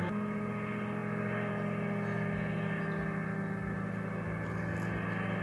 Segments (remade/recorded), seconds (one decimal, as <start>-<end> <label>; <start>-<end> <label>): 0.0-5.4 recorded